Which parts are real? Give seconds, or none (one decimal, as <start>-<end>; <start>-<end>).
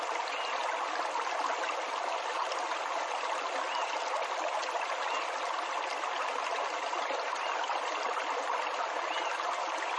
0.0-10.0